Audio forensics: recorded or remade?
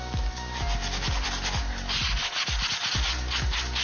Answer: recorded